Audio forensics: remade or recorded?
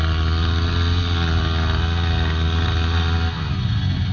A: recorded